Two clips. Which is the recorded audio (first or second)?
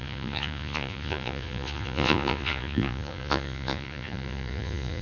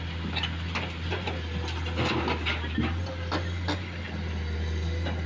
second